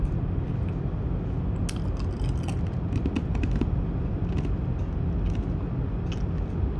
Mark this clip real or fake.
real